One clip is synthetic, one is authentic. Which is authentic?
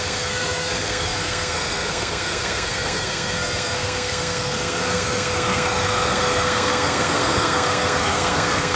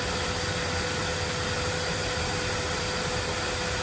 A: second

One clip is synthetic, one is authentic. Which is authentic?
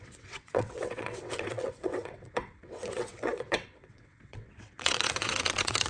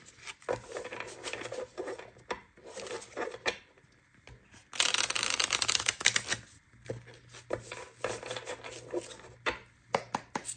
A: second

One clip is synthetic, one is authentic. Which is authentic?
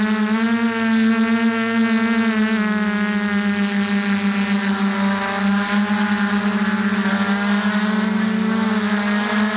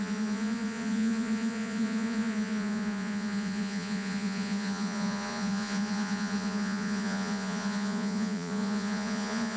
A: first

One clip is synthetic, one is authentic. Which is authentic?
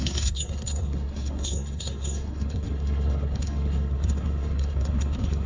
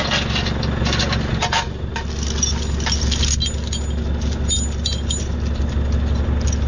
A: second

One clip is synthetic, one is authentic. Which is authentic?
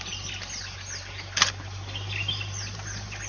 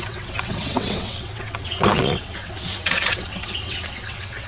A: first